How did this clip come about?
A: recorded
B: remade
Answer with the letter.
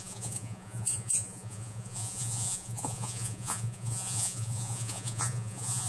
B